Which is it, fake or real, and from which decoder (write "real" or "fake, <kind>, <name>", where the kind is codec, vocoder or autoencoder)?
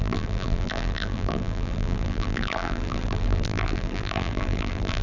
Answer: fake, vocoder, BigVGAN v2